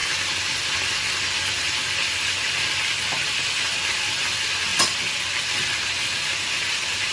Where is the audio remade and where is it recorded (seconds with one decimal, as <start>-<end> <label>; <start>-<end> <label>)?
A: 0.0-7.1 recorded